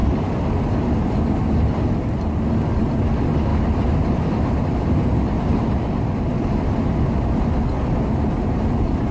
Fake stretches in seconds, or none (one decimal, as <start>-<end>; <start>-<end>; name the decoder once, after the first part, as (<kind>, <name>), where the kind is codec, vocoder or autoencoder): 0.0-1.2 (vocoder, BigVGAN v2); 3.5-6.1